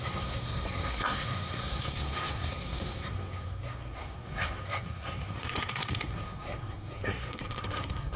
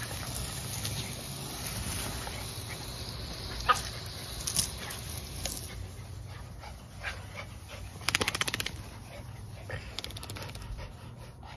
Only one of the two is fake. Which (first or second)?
first